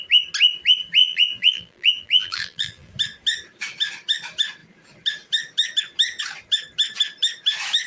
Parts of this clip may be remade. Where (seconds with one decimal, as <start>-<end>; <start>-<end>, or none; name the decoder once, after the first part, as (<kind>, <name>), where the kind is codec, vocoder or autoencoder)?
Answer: 1.0-2.9 (vocoder, BigVGAN v2)